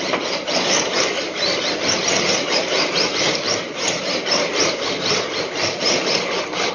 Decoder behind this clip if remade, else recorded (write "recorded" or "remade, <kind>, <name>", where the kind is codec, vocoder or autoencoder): remade, vocoder, BigVGAN v2